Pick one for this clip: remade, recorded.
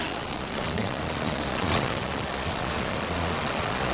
remade